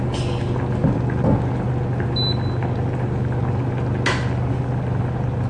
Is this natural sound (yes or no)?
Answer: yes